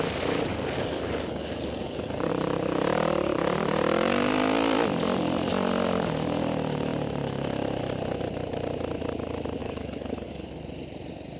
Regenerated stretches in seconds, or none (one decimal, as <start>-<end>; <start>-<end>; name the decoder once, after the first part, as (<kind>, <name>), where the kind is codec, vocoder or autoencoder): 0.5-2.3 (codec, DAC); 9.6-10.5